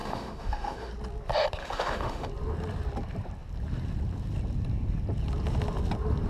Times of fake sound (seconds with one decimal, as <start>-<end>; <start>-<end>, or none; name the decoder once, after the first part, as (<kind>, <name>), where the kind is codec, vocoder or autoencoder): 0.0-0.9 (autoencoder, DAC-VAE); 1.6-2.3